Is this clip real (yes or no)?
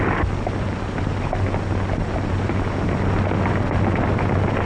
yes